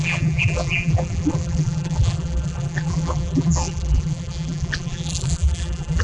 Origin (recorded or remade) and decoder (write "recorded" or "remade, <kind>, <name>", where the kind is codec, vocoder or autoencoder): remade, vocoder, BigVGAN v2